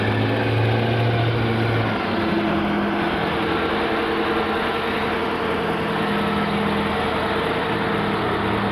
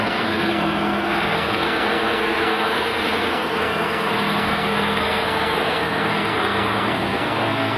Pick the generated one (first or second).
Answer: second